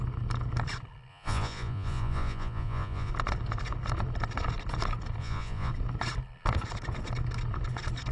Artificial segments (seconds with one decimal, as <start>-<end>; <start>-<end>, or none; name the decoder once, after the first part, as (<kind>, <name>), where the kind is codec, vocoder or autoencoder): 1.1-3.1 (vocoder, Vocos); 5.2-5.7